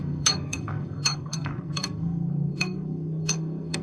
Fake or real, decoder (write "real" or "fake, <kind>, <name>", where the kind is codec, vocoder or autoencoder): fake, codec, SNAC